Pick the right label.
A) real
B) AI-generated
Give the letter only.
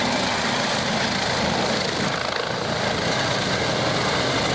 A